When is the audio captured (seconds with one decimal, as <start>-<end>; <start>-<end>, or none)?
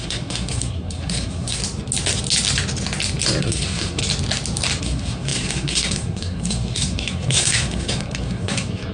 1.6-3.4; 4.0-4.8